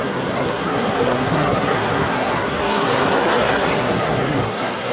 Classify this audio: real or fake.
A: fake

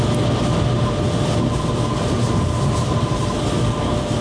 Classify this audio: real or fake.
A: real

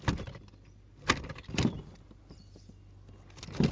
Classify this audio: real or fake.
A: real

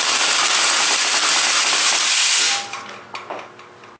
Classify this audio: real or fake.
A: real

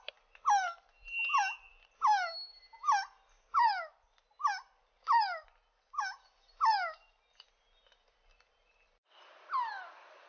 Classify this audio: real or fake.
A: real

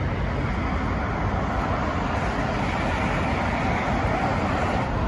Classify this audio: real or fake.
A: real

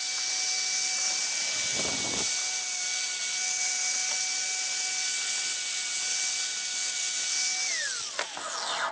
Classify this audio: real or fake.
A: real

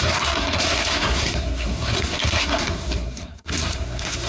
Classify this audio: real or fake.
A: fake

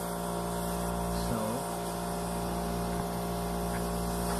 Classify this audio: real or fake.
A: real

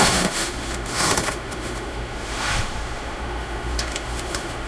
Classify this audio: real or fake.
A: fake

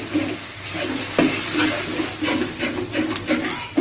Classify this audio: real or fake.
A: real